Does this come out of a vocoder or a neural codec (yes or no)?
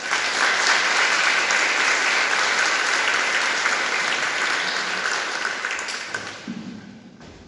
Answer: no